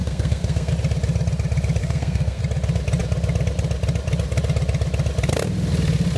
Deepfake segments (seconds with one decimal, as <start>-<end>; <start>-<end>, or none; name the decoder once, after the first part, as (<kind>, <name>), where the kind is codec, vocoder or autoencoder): 0.0-0.7 (codec, SNAC); 1.8-2.4